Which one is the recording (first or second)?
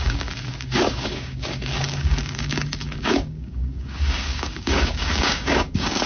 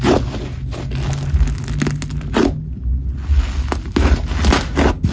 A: second